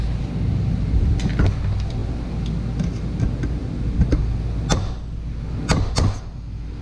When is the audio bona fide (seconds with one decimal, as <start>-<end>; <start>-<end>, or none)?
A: 0.0-6.8

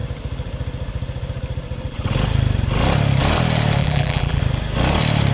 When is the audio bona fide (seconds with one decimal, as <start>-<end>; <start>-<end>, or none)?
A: 0.0-3.8; 4.4-5.3

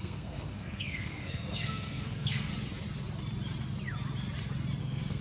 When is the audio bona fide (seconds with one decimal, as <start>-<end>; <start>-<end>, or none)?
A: 2.5-4.8

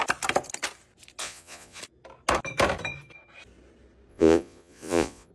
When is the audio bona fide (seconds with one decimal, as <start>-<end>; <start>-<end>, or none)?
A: 0.0-1.2; 1.8-4.1

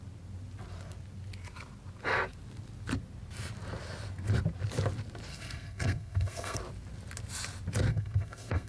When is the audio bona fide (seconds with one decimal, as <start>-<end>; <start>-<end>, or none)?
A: 0.0-5.3; 6.6-7.9

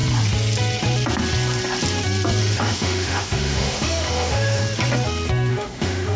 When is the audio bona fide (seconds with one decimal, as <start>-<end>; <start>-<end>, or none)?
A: 0.0-2.4; 4.6-5.5

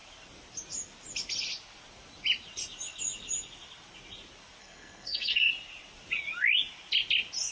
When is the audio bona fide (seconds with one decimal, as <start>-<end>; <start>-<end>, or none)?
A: 0.0-4.6; 5.5-7.5

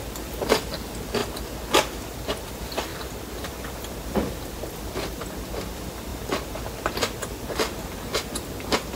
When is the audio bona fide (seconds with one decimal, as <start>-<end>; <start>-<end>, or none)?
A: 0.0-9.0